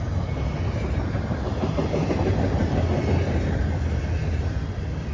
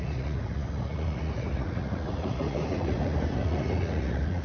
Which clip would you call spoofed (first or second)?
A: second